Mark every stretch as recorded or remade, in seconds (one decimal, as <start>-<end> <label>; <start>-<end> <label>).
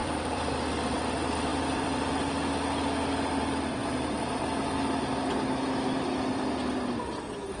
0.0-0.5 remade; 0.5-1.5 recorded; 1.5-2.1 remade; 2.1-3.8 recorded; 3.8-4.4 remade; 4.4-7.6 recorded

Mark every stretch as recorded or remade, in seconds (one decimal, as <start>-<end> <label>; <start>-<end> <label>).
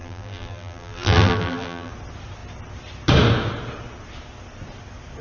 0.0-1.9 remade; 1.9-5.2 recorded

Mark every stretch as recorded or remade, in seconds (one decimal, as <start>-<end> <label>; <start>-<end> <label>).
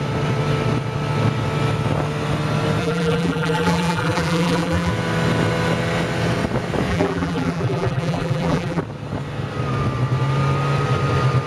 0.0-2.8 recorded; 2.8-4.9 remade; 4.9-6.9 recorded; 6.9-8.8 remade; 8.8-11.5 recorded